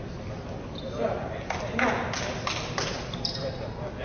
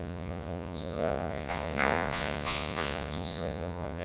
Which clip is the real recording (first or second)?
first